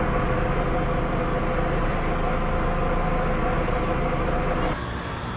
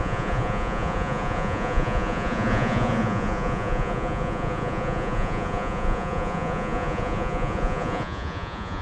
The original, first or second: first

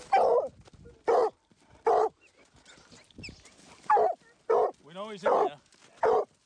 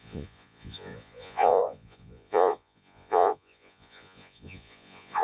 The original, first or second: first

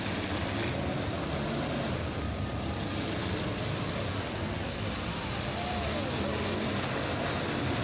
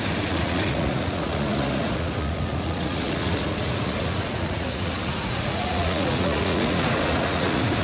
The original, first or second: first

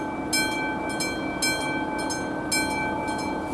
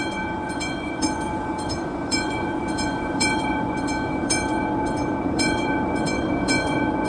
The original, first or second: first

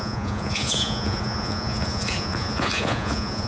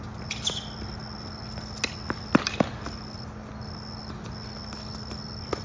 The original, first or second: second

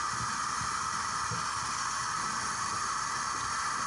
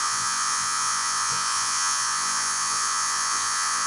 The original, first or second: first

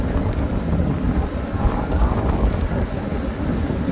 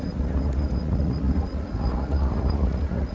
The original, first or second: first